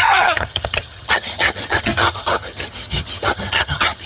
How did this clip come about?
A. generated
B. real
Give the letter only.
A